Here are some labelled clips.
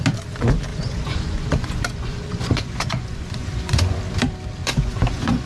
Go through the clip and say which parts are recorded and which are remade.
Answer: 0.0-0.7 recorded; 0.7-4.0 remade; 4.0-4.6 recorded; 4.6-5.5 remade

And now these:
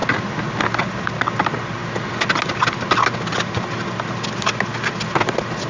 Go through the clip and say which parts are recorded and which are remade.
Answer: 0.0-5.7 recorded

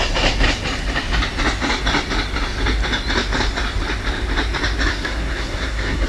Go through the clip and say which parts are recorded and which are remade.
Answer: 0.0-4.9 recorded; 4.9-6.1 remade

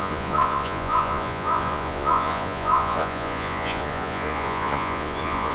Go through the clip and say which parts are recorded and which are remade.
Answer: 0.0-5.5 remade

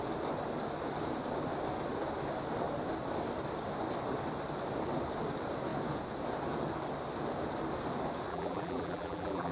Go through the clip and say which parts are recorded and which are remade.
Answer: 0.0-8.3 recorded; 8.3-9.5 remade

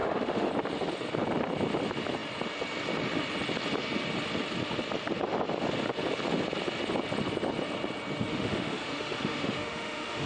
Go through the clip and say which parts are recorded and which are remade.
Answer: 0.0-0.5 remade; 0.5-8.3 recorded; 8.3-10.3 remade

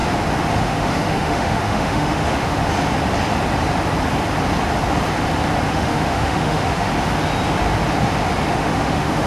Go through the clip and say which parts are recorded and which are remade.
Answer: 0.0-0.6 recorded; 0.6-2.6 remade; 2.6-5.7 recorded; 5.7-6.9 remade; 6.9-8.5 recorded; 8.5-9.3 remade

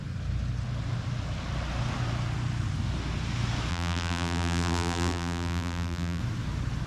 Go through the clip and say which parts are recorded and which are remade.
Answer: 0.0-3.7 recorded; 3.7-6.2 remade; 6.2-6.9 recorded